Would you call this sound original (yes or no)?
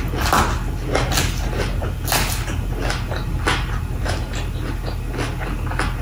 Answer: yes